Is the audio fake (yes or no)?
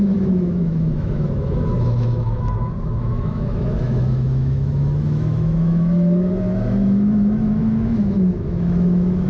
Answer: yes